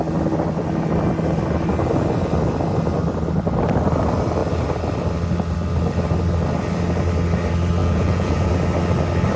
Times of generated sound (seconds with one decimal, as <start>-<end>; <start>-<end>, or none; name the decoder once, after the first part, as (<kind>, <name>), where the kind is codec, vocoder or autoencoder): 7.8-8.5 (vocoder, Vocos)